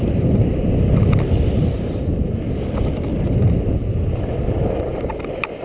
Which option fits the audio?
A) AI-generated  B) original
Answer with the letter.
B